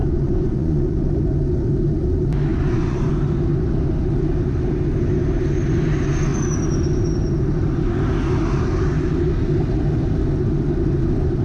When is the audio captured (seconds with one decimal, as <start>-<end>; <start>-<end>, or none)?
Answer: 1.0-2.5; 3.1-11.4